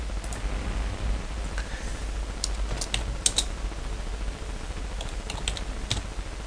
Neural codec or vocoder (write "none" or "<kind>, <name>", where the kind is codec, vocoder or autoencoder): none